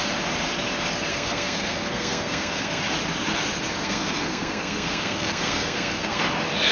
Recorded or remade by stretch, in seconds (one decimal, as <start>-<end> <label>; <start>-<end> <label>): 0.0-1.1 recorded; 1.1-2.8 remade; 2.8-3.8 recorded; 3.8-6.2 remade; 6.2-6.7 recorded